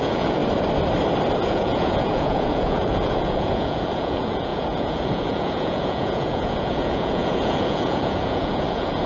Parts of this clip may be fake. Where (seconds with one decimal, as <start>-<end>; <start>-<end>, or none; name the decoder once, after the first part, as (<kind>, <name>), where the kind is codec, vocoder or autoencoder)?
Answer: 0.0-0.4 (vocoder, Vocos); 1.4-9.1